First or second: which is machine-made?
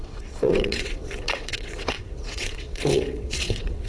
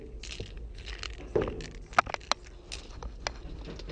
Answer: first